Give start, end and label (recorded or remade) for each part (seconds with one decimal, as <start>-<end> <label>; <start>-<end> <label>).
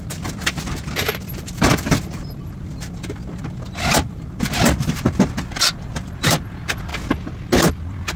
0.0-6.9 remade; 6.9-7.7 recorded; 7.7-8.2 remade